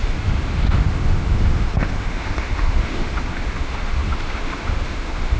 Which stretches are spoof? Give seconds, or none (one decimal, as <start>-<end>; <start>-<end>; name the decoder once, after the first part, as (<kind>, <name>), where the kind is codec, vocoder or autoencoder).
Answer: 0.0-5.4 (autoencoder, DAC-VAE)

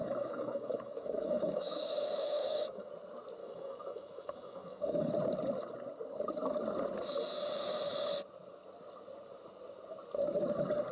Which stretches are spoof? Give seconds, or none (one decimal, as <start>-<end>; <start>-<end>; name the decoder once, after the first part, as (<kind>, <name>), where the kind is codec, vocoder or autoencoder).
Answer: 0.0-2.9 (autoencoder, DAC-VAE); 3.4-5.1

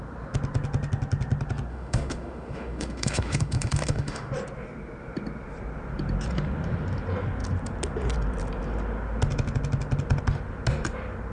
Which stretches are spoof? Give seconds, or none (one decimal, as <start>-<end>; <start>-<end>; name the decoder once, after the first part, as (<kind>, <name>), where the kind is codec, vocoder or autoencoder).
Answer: 1.7-4.3 (autoencoder, DAC-VAE)

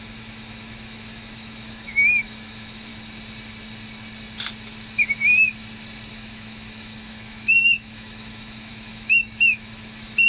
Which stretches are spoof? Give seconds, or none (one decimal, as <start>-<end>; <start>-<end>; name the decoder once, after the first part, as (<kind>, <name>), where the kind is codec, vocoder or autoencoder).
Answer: 0.0-2.9 (autoencoder, DAC-VAE); 6.1-10.3

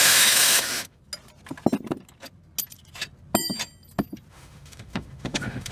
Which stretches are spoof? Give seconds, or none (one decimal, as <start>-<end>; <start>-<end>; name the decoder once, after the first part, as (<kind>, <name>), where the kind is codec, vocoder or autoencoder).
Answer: 0.0-1.0 (autoencoder, DAC-VAE); 4.3-5.7

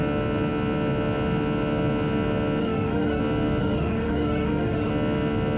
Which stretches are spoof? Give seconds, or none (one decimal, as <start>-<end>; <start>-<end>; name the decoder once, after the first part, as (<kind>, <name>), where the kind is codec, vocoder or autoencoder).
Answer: 2.6-3.2 (autoencoder, DAC-VAE); 3.6-4.9